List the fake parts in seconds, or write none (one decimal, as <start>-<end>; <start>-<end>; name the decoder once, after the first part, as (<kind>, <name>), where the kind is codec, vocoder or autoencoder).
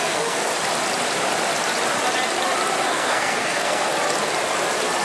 0.0-0.5 (codec, SNAC); 2.8-3.9